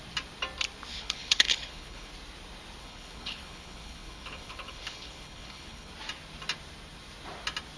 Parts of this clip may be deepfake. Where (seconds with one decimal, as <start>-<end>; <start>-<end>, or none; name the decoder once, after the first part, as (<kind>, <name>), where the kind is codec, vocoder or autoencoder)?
0.9-2.1 (codec, HILCodec); 2.8-5.9